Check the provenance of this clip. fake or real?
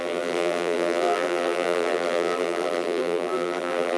fake